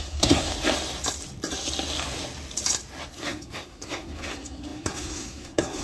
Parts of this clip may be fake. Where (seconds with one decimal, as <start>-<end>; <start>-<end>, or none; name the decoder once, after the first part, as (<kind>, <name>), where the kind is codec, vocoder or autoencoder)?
0.0-0.5 (codec, SNAC); 3.1-5.8

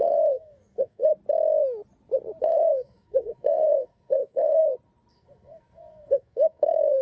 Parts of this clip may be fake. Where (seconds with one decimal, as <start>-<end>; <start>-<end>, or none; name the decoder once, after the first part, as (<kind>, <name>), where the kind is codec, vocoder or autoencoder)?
0.0-1.1 (codec, SNAC); 2.4-4.6; 5.1-7.0

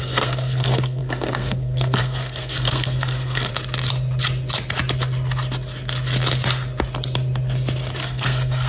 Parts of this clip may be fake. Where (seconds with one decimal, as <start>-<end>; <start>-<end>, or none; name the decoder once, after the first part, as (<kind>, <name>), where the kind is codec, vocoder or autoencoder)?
0.0-3.5 (codec, SNAC); 8.0-8.7

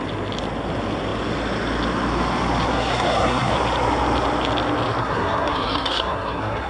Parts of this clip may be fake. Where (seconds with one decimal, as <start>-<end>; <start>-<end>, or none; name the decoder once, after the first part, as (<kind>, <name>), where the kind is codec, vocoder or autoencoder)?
2.6-3.5 (codec, SNAC); 5.0-6.7

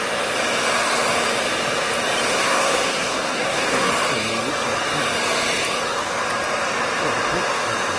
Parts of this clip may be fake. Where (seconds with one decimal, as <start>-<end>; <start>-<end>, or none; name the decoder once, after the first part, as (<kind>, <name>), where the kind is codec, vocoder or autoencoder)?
2.3-3.9 (codec, SNAC)

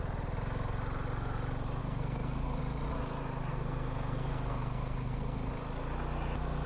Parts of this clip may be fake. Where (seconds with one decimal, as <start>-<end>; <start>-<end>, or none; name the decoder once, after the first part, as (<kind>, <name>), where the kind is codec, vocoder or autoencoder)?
1.8-2.6 (codec, SNAC); 3.5-5.5

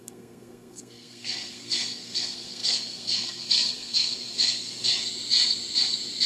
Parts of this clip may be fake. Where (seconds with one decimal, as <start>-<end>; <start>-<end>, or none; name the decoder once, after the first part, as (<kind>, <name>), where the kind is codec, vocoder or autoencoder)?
0.0-4.9 (codec, SNAC)